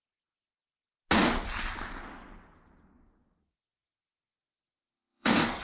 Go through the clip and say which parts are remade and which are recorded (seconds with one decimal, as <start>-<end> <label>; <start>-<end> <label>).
0.0-3.4 recorded; 3.4-5.6 remade